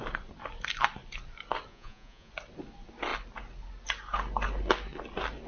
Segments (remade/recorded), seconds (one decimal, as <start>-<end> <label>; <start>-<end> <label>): 0.0-1.7 recorded; 1.7-2.3 remade; 2.3-5.5 recorded